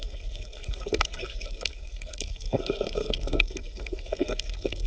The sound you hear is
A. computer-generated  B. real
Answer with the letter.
A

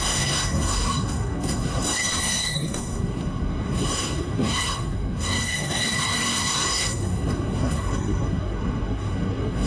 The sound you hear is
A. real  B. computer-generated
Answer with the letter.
B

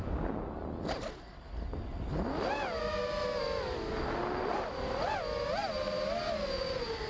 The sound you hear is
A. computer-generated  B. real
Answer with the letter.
B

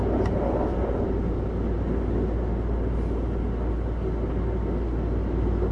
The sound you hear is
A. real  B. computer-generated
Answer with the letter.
A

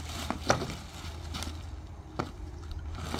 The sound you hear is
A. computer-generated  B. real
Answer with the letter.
B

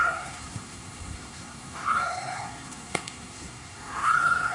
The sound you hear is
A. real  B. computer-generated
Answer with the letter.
B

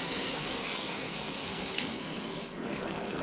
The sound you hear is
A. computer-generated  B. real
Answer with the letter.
A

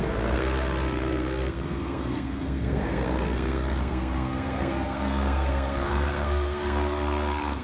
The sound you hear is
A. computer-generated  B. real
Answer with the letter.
A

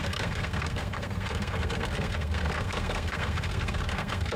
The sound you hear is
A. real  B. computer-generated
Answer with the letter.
B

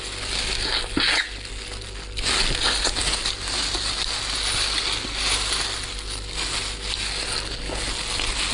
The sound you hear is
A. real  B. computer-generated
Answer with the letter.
A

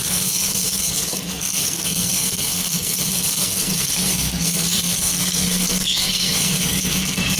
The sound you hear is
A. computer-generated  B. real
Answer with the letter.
A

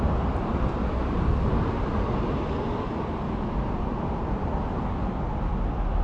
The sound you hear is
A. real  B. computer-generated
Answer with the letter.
A